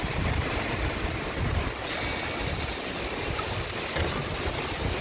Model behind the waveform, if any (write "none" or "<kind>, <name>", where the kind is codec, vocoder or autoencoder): none